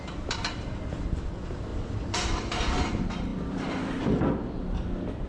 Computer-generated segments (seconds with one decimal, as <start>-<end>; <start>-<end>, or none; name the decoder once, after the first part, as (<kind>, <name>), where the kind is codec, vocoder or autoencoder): 1.7-2.6 (vocoder, BigVGAN v2); 3.3-4.3